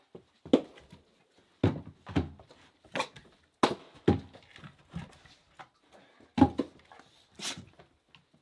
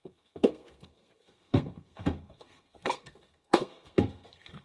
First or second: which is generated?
second